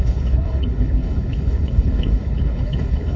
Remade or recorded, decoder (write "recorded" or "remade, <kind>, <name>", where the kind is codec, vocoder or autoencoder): remade, codec, HILCodec